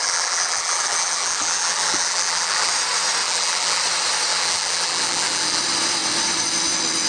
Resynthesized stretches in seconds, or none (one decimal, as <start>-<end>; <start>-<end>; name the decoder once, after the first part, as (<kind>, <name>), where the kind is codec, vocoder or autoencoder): 0.0-2.7 (vocoder, BigVGAN v2); 3.2-3.8; 4.3-5.6